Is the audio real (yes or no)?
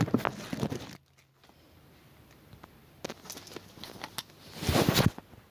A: yes